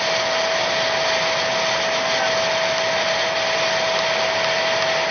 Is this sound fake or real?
real